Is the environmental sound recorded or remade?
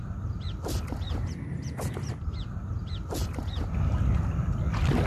recorded